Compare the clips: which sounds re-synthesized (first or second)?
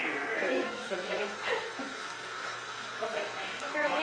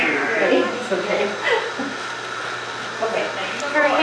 first